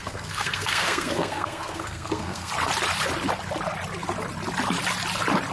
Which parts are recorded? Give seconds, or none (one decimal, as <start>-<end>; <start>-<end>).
2.5-5.5